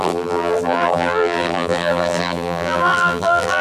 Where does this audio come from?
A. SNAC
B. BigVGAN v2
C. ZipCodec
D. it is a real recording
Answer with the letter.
B